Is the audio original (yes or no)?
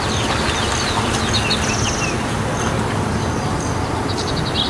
yes